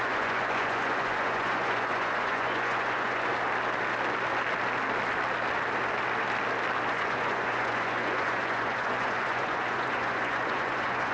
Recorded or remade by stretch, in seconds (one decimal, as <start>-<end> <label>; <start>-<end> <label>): 0.0-3.3 remade; 3.3-6.9 recorded; 6.9-11.1 remade

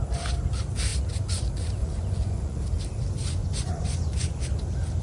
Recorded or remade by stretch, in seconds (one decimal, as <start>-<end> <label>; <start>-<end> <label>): 0.0-1.8 recorded; 1.8-2.6 remade; 2.6-3.4 recorded; 3.4-4.4 remade; 4.4-5.0 recorded

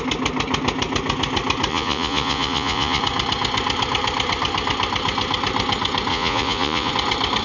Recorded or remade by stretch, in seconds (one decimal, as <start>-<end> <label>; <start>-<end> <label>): 0.0-1.7 recorded; 1.7-3.0 remade; 3.0-6.1 recorded; 6.1-6.9 remade; 6.9-7.4 recorded

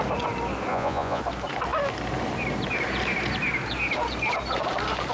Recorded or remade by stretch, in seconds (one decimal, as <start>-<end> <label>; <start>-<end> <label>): 0.0-0.7 recorded; 0.7-1.2 remade; 1.2-5.1 recorded

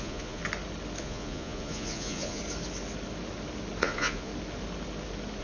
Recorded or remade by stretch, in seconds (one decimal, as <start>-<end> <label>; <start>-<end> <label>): 0.0-0.4 remade; 0.4-1.0 recorded; 1.0-2.4 remade; 2.4-3.8 recorded; 3.8-4.3 remade; 4.3-5.4 recorded

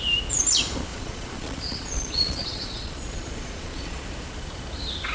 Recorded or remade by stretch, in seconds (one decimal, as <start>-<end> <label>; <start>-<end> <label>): 0.0-0.9 recorded; 0.9-4.0 remade; 4.0-5.1 recorded